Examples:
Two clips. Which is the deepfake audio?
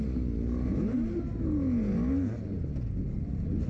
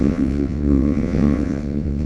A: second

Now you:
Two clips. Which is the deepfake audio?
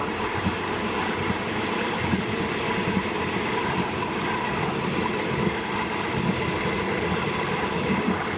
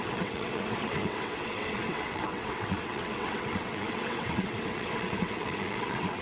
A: second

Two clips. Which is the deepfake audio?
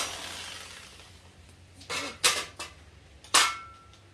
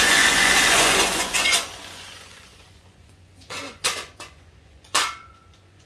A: second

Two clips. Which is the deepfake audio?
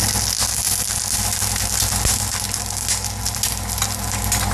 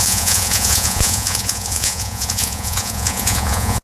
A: second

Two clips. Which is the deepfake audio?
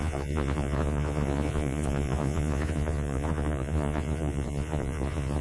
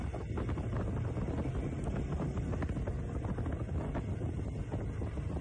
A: first